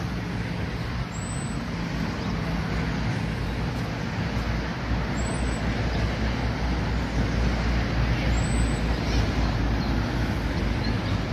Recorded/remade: recorded